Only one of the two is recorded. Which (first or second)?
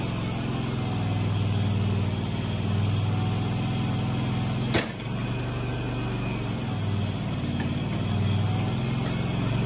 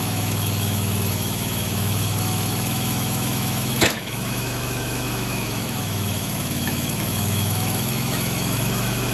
first